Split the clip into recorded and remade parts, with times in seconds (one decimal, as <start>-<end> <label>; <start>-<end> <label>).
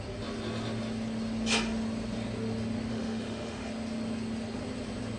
0.0-2.9 recorded; 2.9-3.7 remade; 3.7-5.2 recorded